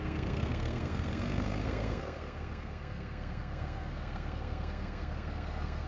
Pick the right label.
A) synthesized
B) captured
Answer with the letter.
A